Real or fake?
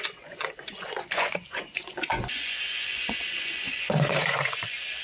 fake